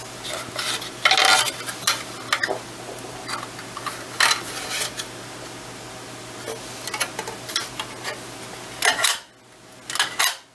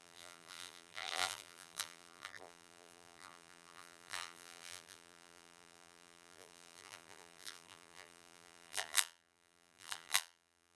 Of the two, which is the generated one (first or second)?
second